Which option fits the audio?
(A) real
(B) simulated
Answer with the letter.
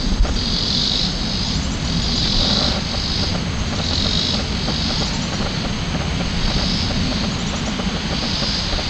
A